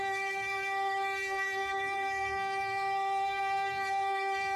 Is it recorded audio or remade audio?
remade